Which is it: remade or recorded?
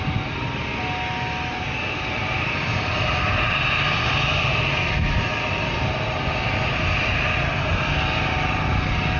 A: recorded